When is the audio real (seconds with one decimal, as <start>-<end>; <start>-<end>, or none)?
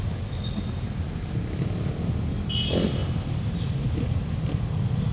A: 0.0-5.1